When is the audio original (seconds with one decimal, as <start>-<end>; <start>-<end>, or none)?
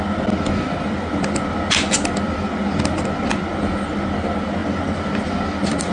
0.0-5.9